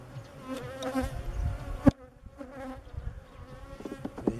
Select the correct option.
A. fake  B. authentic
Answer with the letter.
B